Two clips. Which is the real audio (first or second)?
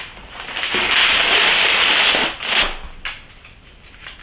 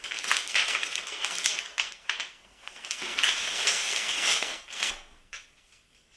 first